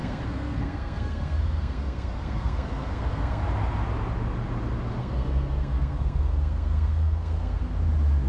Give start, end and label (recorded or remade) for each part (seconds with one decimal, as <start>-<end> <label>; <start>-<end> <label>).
0.0-3.4 remade; 3.4-5.0 recorded; 5.0-7.6 remade; 7.6-8.3 recorded